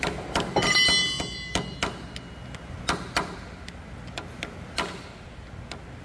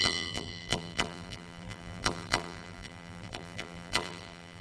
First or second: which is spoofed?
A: second